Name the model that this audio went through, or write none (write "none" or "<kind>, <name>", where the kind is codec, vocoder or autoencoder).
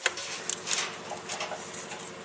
none